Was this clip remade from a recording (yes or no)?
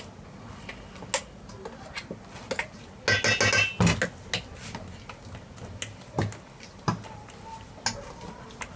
no